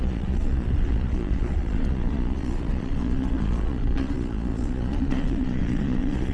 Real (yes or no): no